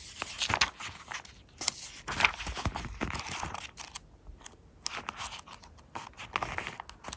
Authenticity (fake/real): real